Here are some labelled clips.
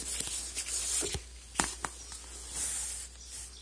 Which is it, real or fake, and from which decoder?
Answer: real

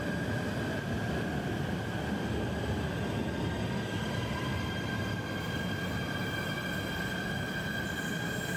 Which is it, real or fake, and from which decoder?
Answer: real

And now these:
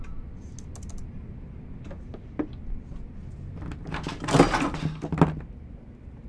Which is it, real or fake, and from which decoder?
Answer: real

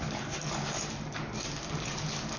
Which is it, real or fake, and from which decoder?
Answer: fake, codec, DAC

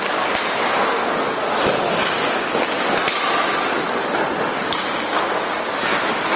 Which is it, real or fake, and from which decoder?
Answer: real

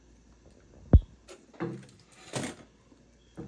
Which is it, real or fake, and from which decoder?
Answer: real